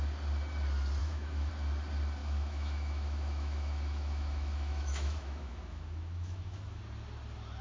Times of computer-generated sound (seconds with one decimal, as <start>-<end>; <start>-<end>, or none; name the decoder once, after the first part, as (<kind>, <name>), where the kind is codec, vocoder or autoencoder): 1.0-1.5 (autoencoder, DAC-VAE); 2.2-6.8